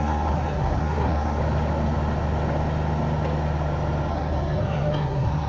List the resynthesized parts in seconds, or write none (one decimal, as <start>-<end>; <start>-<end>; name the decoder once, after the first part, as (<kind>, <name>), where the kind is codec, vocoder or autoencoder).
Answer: 0.0-1.4 (codec, SNAC); 4.1-5.5